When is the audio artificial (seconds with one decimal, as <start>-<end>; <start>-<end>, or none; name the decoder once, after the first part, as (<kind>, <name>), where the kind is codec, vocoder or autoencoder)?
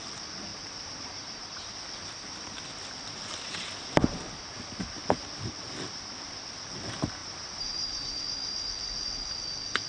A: 0.5-1.7 (vocoder, BigVGAN v2); 7.2-8.2